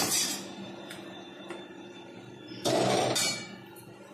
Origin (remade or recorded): remade